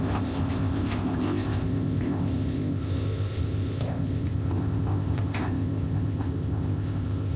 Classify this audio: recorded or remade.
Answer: remade